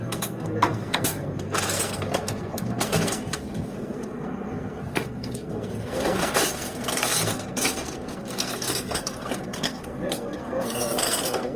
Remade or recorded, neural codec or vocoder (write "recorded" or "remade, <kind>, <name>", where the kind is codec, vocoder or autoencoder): remade, codec, SNAC